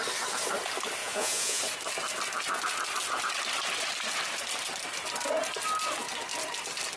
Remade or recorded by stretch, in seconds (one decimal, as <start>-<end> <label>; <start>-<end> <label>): 0.0-1.0 recorded; 1.0-1.6 remade; 1.6-7.0 recorded